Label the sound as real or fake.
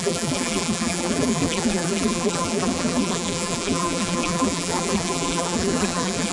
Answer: fake